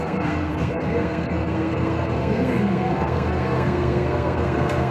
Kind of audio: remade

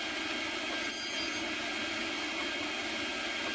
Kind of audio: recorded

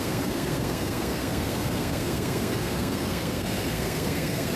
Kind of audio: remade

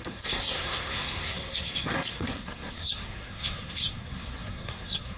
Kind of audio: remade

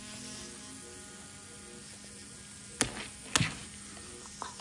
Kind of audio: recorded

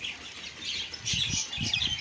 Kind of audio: recorded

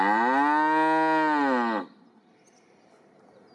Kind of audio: recorded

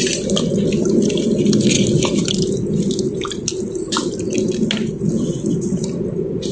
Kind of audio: recorded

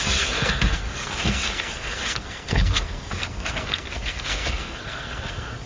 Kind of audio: remade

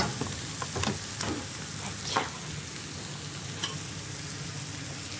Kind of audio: recorded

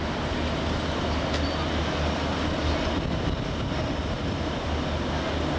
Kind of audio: recorded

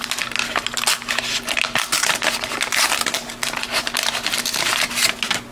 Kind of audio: recorded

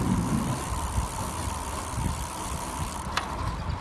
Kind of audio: recorded